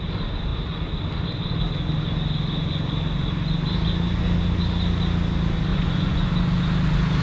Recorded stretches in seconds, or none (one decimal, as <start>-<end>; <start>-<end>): 0.0-5.7; 6.3-7.2